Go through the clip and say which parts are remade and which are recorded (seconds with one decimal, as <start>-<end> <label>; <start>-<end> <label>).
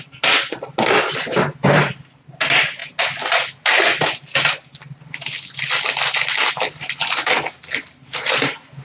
0.0-8.8 recorded